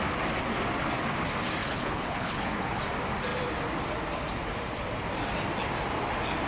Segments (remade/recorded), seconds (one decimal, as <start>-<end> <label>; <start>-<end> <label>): 0.0-1.6 recorded; 1.6-2.8 remade; 2.8-6.5 recorded